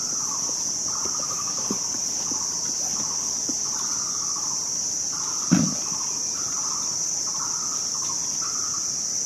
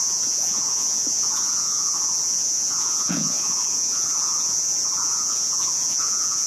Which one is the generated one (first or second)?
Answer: second